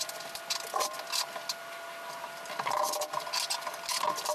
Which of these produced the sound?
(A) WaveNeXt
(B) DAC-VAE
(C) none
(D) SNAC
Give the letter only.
C